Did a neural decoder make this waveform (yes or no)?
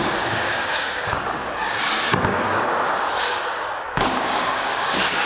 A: yes